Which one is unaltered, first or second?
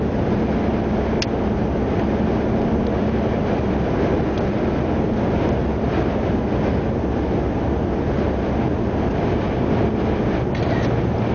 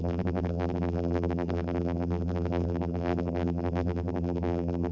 first